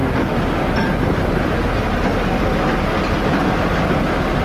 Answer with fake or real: real